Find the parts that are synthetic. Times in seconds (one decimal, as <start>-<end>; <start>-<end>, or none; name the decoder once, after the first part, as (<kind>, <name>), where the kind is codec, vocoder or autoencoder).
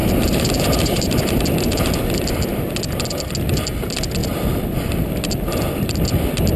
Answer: 0.0-1.4 (vocoder, BigVGAN v2)